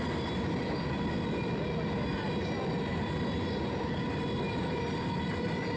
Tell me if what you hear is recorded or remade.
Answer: recorded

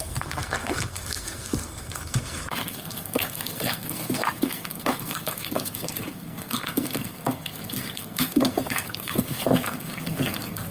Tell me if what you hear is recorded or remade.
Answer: remade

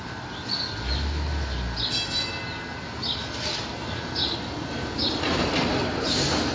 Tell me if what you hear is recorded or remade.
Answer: recorded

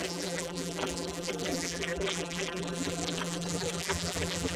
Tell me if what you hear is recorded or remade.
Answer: remade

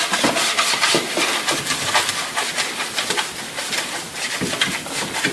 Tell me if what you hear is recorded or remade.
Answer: recorded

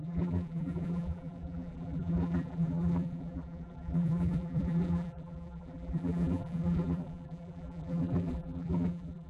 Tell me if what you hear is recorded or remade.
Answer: remade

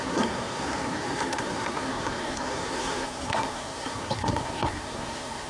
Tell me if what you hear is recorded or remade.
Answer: remade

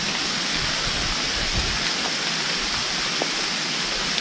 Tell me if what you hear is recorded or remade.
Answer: recorded